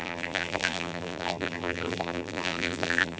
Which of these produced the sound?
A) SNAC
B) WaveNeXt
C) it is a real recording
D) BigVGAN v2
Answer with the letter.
D